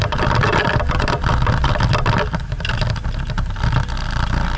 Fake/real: real